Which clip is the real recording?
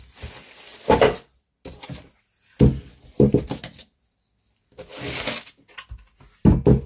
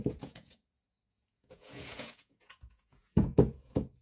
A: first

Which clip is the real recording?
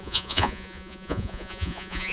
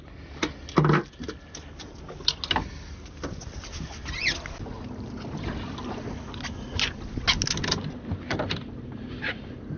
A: second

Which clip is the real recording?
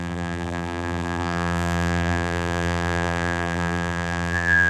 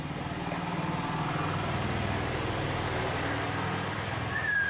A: second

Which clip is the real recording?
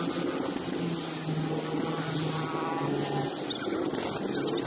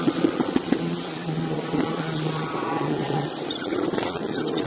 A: first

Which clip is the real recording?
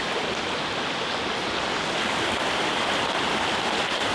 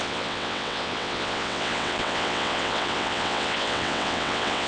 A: first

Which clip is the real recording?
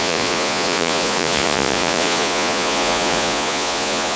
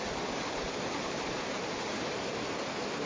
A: second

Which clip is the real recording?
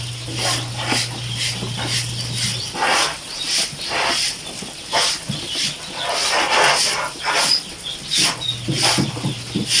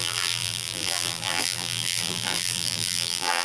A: first